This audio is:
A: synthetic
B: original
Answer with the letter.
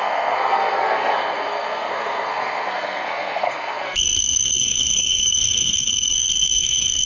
A